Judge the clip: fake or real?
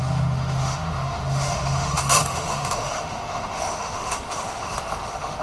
fake